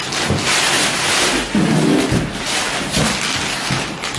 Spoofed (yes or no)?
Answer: no